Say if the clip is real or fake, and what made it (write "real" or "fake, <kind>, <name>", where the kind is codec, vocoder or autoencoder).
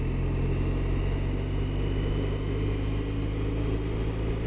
real